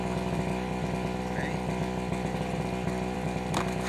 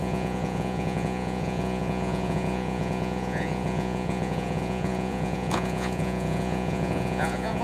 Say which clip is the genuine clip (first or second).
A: first